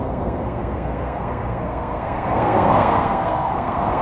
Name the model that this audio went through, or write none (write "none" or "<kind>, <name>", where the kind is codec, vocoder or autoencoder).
codec, SNAC